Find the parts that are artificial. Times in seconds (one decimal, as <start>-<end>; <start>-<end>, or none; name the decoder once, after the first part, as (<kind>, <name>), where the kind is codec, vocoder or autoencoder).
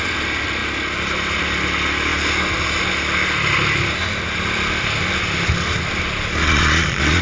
6.4-7.2 (vocoder, Vocos)